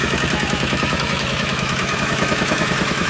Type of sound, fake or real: fake